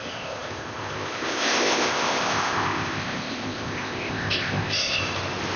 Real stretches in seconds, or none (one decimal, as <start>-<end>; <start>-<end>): 5.0-5.6